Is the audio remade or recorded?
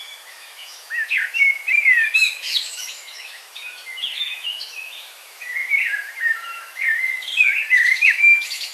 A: remade